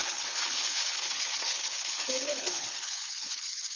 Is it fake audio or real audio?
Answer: fake